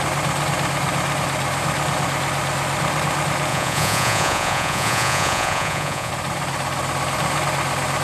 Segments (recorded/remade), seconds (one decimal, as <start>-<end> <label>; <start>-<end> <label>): 0.0-3.5 recorded; 3.5-6.1 remade; 6.1-8.0 recorded